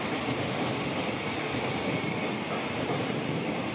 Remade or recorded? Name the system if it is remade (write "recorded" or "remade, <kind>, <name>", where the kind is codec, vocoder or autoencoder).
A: recorded